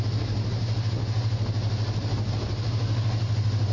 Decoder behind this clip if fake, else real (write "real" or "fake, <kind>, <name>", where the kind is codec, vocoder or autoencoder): real